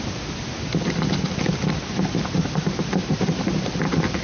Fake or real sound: real